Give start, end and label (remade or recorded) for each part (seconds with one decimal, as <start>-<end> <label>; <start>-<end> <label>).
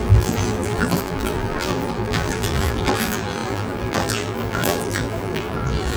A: 0.0-6.0 remade